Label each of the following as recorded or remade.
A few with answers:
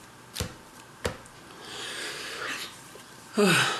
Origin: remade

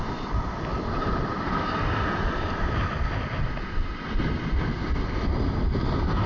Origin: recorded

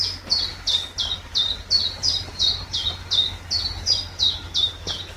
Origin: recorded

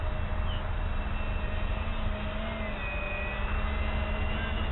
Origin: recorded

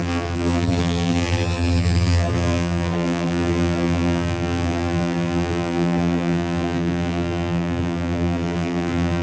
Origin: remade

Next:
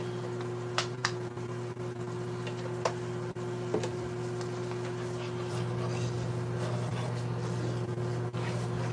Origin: recorded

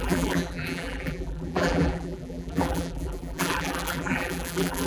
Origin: remade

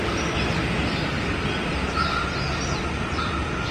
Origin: recorded